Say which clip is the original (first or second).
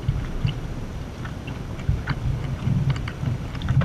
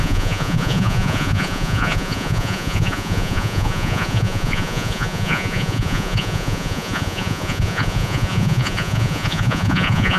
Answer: first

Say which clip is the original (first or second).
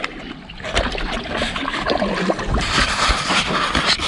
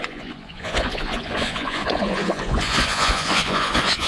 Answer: first